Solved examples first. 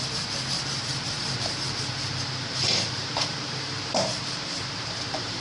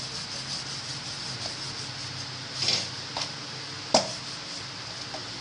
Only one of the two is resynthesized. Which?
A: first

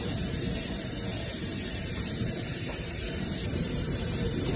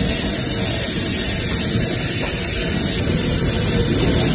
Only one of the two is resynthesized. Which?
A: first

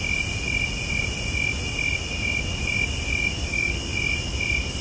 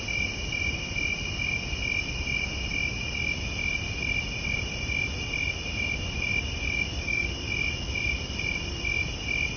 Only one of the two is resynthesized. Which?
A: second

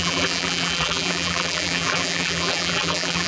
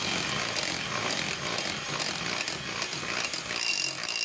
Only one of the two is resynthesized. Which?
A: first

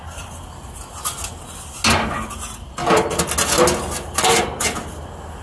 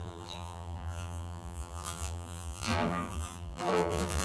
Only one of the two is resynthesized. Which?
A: second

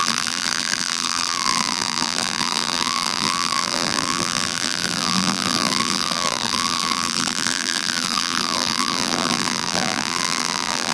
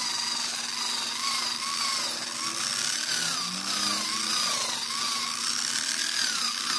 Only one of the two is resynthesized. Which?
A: first